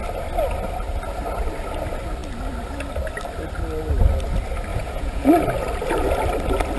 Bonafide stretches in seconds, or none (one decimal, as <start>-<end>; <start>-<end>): 0.0-4.7; 5.3-6.8